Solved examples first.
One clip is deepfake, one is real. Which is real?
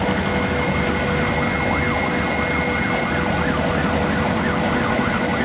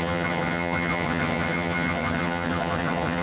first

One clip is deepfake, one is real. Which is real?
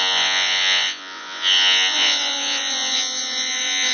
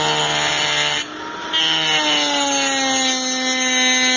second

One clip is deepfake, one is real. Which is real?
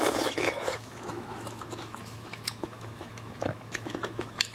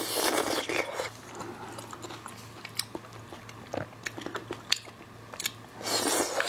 second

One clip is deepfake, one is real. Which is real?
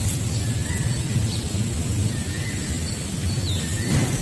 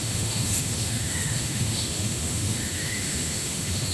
first